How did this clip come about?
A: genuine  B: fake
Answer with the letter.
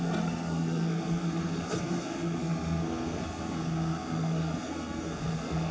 B